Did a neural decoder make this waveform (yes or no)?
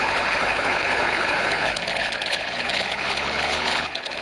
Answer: yes